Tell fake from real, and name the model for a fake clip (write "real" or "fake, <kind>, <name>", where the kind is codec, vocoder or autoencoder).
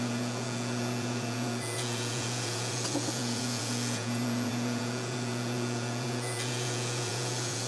fake, vocoder, Vocos